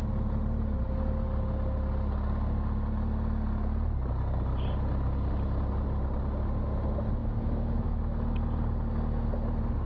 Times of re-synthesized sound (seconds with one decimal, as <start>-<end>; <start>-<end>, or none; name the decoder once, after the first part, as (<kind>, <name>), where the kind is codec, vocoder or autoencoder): 7.2-8.4 (autoencoder, DAC-VAE)